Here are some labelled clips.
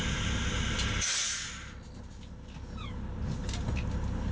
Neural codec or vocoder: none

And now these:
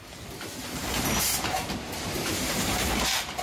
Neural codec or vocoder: vocoder, BigVGAN v2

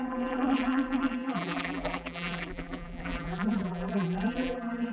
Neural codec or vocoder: vocoder, BigVGAN v2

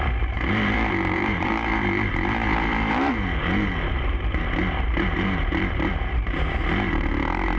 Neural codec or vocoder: vocoder, BigVGAN v2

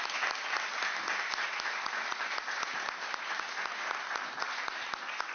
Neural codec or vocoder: none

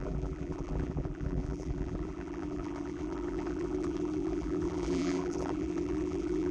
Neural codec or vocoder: vocoder, BigVGAN v2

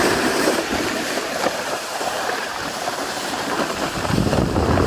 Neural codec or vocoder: vocoder, BigVGAN v2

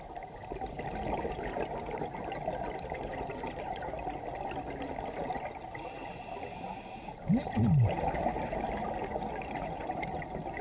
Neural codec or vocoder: none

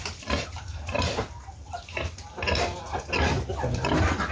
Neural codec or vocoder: none